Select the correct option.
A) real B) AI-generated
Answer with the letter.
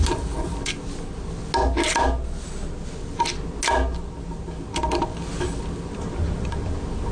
A